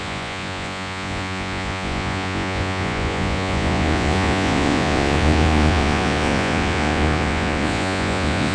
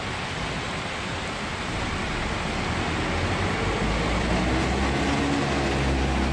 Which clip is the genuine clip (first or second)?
second